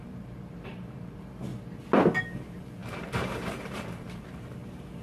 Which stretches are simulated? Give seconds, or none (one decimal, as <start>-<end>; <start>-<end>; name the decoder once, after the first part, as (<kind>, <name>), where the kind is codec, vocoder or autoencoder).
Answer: 0.0-1.5 (vocoder, BigVGAN v2); 2.2-5.0